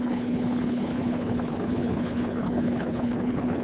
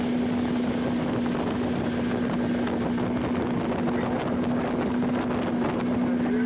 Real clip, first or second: second